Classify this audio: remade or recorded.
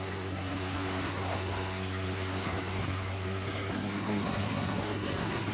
remade